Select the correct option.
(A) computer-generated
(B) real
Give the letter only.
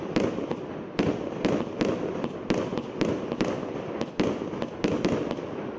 B